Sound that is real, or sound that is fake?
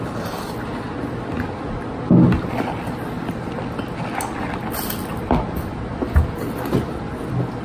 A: real